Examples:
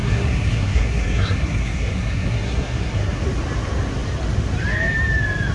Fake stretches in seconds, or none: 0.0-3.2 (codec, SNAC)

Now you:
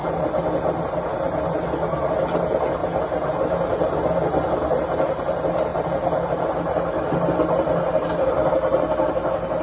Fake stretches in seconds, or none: none

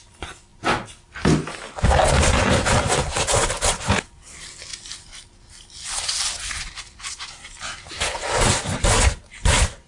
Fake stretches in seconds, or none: none

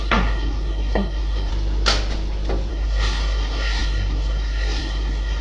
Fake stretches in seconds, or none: 0.0-1.5 (codec, SNAC); 2.7-5.4

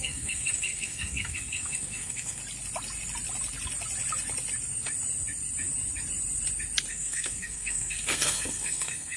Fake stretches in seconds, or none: 0.0-2.4 (codec, SNAC); 6.9-9.2

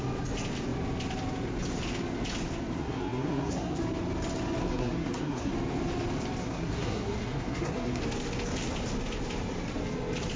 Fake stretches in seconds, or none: 2.8-3.8 (codec, SNAC); 4.6-5.5; 6.4-8.0